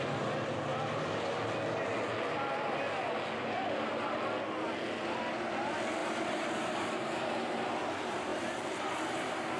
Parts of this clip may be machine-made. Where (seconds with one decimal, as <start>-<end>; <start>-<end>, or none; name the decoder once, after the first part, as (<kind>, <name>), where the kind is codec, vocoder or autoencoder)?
6.0-7.7 (vocoder, BigVGAN v2); 8.3-8.8